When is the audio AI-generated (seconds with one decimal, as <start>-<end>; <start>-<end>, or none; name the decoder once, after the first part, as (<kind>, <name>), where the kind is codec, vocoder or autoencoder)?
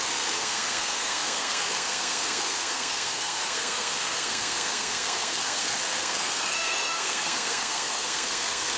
0.0-8.8 (codec, SNAC)